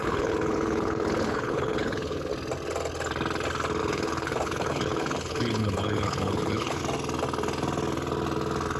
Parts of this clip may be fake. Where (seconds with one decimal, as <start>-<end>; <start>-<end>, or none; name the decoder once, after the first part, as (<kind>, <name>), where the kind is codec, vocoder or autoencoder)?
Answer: 0.0-2.3 (codec, HILCodec); 3.8-6.8